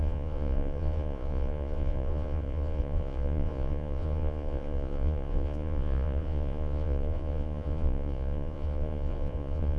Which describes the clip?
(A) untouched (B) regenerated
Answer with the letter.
B